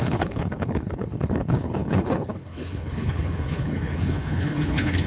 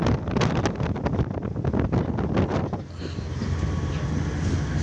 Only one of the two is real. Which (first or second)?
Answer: second